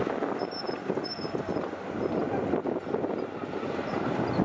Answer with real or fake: real